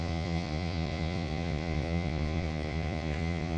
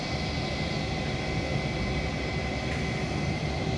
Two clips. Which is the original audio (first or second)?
second